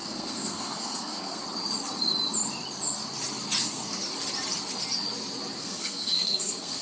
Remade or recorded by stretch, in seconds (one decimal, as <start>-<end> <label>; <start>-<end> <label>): 0.0-1.4 remade; 1.4-3.6 recorded; 3.6-4.0 remade; 4.0-5.6 recorded; 5.6-6.8 remade